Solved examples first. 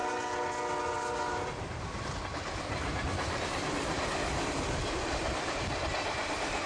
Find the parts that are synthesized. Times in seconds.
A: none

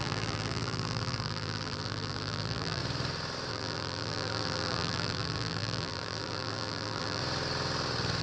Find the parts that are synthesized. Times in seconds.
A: 0.0-2.8 (vocoder, BigVGAN v2); 3.5-7.2

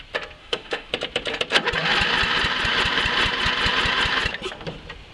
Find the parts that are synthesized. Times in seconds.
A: 0.4-0.9 (autoencoder, DAC-VAE)